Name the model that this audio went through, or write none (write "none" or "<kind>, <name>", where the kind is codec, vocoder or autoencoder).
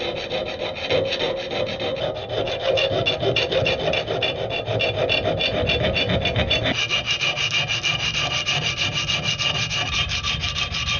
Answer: none